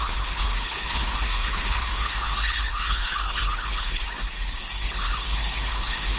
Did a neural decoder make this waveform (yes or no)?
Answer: yes